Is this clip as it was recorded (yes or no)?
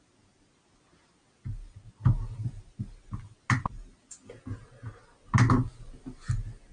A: yes